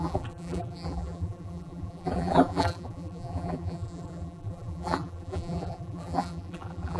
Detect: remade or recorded remade